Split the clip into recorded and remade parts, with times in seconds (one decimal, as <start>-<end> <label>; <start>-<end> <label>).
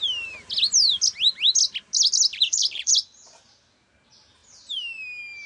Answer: 0.0-2.3 recorded; 2.3-2.9 remade; 2.9-5.5 recorded